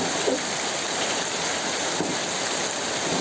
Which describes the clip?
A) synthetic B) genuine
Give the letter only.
B